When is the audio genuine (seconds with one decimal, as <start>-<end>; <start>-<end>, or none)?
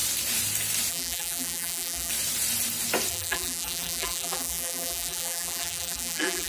0.0-0.9; 2.1-3.1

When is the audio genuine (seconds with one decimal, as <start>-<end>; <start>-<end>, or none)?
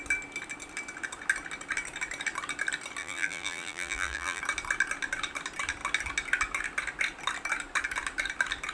0.0-3.0; 4.4-8.7